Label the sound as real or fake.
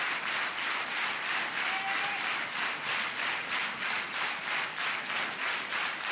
real